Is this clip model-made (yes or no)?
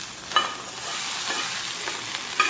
no